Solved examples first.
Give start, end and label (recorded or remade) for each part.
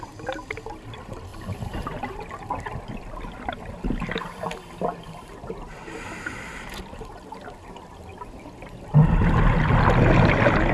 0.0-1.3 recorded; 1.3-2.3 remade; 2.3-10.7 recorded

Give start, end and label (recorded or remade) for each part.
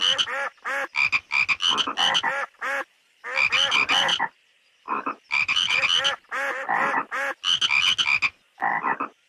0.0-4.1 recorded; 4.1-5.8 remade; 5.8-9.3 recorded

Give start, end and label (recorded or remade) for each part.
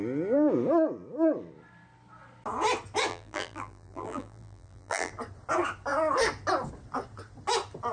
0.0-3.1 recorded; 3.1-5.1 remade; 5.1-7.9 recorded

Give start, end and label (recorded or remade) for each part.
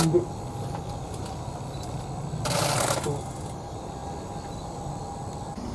0.0-5.7 recorded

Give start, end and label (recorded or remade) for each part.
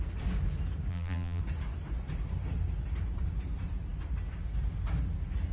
0.0-0.9 recorded; 0.9-1.4 remade; 1.4-5.5 recorded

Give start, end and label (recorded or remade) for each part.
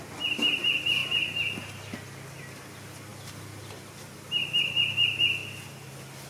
0.0-6.3 recorded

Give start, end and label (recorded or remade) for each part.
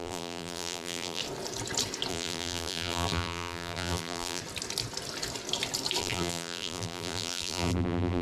0.0-1.2 remade; 1.2-2.1 recorded; 2.1-4.4 remade; 4.4-6.0 recorded; 6.0-8.2 remade